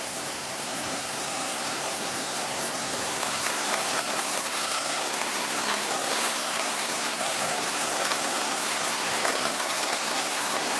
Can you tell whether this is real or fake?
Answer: fake